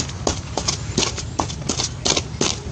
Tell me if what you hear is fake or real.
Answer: real